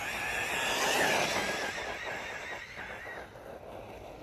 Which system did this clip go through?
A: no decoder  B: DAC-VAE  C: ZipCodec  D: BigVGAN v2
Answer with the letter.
A